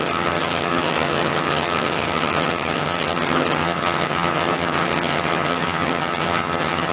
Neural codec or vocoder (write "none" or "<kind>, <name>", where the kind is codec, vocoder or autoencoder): vocoder, HiFi-GAN